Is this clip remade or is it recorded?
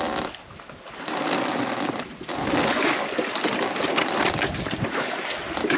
recorded